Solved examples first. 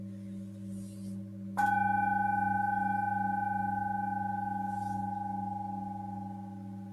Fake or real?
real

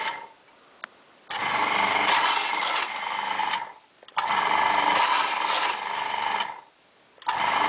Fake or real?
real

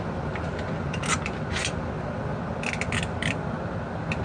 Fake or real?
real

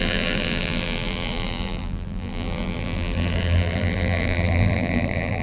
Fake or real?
fake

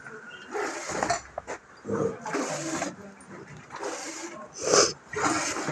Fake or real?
real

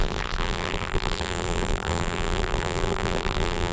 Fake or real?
fake